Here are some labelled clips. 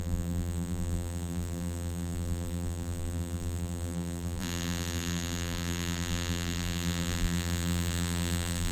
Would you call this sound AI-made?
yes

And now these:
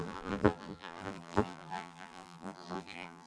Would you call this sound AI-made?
yes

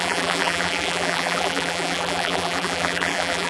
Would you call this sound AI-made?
yes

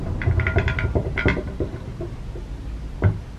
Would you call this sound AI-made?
no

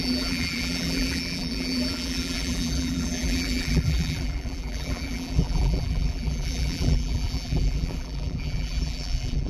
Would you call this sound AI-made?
yes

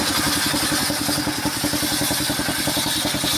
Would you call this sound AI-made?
no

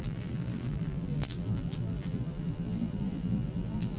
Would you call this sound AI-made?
yes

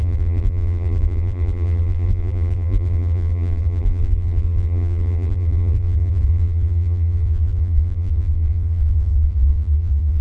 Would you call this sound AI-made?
yes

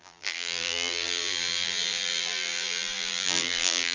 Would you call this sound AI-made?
yes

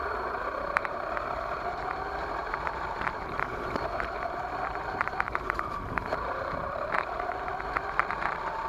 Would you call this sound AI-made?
yes